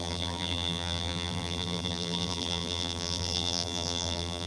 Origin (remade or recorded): remade